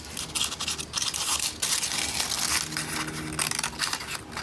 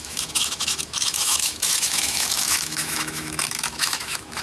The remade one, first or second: second